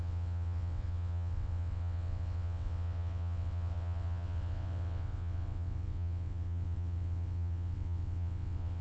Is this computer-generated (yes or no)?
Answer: yes